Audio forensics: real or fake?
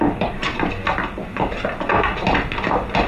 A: real